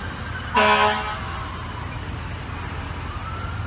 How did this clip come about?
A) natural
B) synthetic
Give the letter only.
A